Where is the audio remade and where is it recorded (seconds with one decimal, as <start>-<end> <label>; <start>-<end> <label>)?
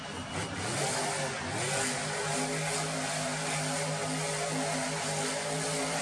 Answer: 0.0-6.0 recorded